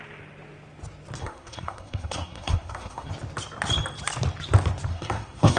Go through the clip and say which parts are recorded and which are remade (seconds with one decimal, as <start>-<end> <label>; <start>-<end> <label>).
0.0-1.2 recorded; 1.2-3.1 remade; 3.1-4.9 recorded; 4.9-5.6 remade